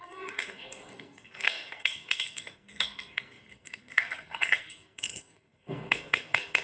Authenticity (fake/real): fake